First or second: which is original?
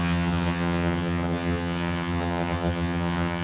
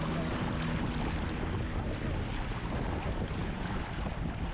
second